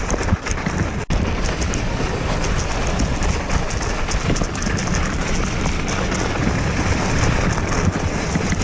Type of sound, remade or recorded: recorded